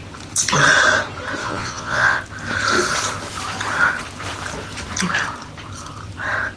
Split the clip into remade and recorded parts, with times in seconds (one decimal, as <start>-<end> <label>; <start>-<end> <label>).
0.0-1.4 recorded; 1.4-2.2 remade; 2.2-6.6 recorded